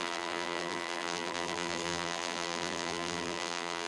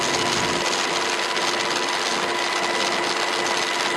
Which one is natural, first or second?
second